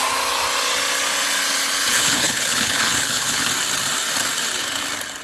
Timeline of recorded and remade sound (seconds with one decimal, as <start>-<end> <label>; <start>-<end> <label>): 0.0-1.9 recorded; 1.9-3.5 remade; 3.5-5.2 recorded